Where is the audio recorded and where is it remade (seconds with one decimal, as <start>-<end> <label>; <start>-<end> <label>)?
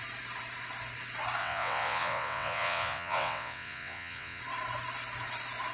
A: 0.0-1.4 recorded; 1.4-4.4 remade; 4.4-5.7 recorded